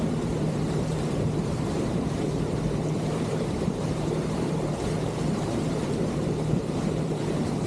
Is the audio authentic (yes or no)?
no